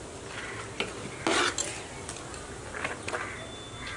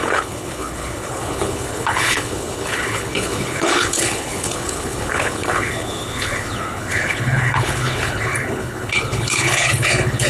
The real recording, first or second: first